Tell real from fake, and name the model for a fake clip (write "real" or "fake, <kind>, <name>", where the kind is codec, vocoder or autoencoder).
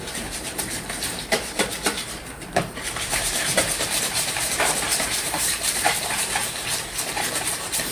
fake, vocoder, BigVGAN v2